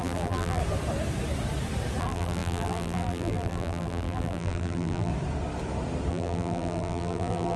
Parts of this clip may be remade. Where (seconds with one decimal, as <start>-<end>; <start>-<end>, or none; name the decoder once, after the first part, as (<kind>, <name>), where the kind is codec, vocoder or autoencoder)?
0.0-0.6 (vocoder, BigVGAN v2); 2.0-5.1; 6.1-7.6